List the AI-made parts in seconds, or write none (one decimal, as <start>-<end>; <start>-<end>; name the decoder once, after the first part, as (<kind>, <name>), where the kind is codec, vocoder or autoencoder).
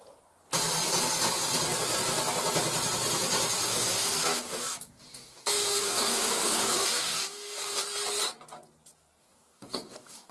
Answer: 3.7-7.8 (codec, DAC); 9.2-10.3